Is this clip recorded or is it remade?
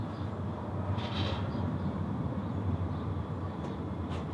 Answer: remade